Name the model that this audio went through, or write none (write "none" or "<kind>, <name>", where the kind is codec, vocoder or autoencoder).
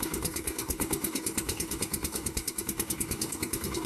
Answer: codec, DAC